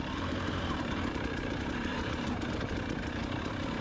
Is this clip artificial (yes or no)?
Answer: yes